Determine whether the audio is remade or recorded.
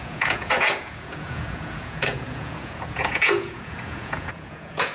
remade